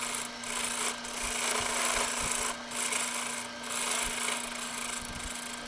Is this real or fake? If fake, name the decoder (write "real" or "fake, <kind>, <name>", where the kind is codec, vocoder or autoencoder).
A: real